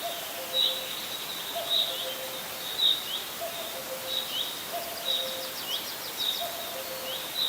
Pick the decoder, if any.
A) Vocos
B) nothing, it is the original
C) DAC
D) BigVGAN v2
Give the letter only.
B